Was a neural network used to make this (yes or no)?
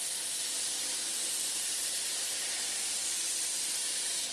yes